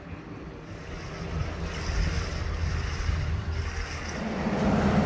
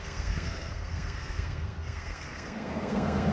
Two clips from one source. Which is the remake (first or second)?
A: second